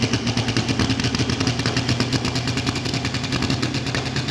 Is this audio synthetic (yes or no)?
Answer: no